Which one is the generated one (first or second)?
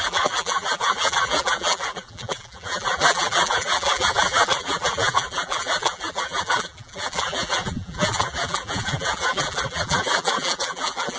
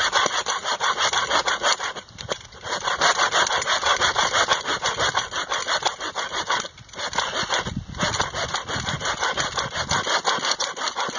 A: first